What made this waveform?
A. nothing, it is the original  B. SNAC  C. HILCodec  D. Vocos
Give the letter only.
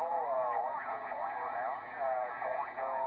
D